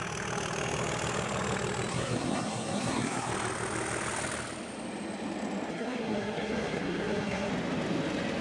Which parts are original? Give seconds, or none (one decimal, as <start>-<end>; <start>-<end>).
0.0-1.9; 3.3-5.7; 7.5-8.4